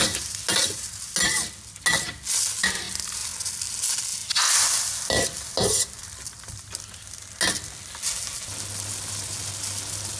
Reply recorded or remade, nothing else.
recorded